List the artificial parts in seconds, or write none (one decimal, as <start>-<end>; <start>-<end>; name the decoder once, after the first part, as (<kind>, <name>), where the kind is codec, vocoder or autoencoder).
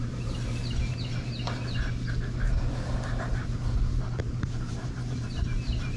0.0-0.6 (vocoder, BigVGAN v2); 4.2-6.0